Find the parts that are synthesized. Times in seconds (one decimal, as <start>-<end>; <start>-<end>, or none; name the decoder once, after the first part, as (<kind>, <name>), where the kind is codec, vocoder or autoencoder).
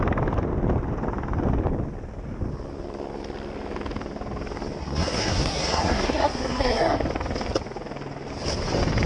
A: 4.8-7.0 (codec, SNAC)